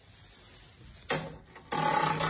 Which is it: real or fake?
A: real